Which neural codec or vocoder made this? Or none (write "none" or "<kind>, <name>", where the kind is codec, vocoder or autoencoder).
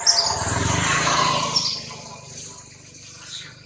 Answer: none